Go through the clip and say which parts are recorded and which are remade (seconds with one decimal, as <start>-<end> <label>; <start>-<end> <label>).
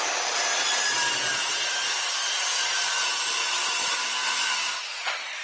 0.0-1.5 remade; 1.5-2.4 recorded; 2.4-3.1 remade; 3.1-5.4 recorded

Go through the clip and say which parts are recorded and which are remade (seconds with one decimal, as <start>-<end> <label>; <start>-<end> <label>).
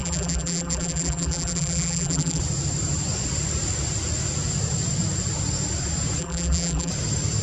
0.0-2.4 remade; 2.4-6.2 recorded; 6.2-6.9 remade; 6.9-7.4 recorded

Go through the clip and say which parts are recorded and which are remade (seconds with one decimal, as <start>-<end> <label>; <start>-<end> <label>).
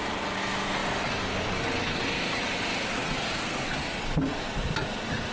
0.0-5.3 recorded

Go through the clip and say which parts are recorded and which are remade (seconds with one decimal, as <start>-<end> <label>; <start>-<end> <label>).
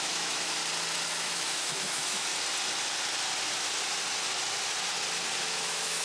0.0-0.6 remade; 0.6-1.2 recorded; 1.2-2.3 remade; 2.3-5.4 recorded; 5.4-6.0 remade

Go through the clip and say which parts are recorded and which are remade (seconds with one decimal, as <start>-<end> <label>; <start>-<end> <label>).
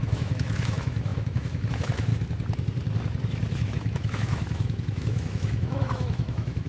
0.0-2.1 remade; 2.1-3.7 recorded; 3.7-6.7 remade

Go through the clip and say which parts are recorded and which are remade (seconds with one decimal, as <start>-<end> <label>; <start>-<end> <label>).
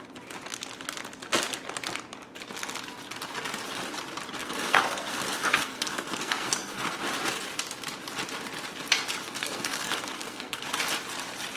0.0-4.4 recorded; 4.4-7.0 remade; 7.0-9.2 recorded; 9.2-10.7 remade; 10.7-11.6 recorded